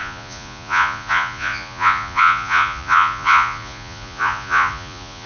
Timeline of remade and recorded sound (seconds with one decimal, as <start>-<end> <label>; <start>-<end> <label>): 0.0-5.3 remade